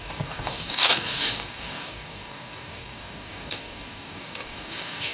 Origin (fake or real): fake